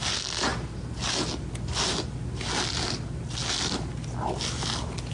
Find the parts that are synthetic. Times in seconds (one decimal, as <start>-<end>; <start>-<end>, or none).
none